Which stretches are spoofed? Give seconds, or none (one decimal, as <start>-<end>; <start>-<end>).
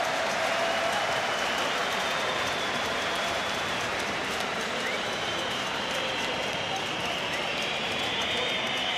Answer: 1.8-6.3; 7.5-8.5